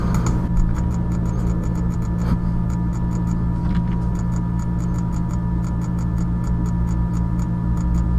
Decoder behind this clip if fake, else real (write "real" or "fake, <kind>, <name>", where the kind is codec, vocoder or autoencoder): real